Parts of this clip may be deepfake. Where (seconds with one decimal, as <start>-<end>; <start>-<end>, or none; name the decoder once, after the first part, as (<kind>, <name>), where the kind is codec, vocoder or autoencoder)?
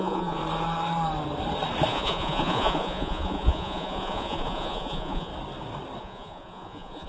0.0-0.4 (vocoder, Vocos); 1.9-5.3; 6.0-7.1